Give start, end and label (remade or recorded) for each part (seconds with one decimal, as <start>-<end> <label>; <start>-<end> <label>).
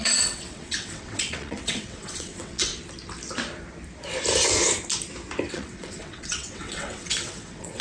0.0-2.7 remade; 2.7-5.5 recorded; 5.5-7.8 remade